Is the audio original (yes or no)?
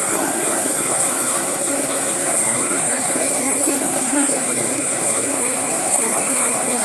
no